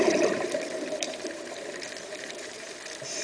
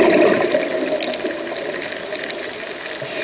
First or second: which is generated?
first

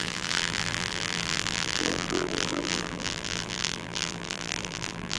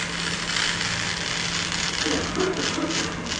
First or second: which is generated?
first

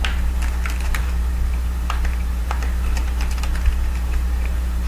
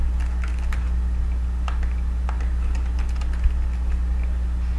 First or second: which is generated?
first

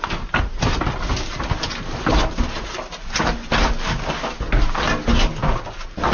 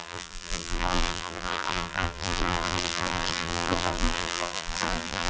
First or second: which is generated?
second